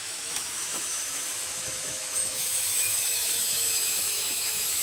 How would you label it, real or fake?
fake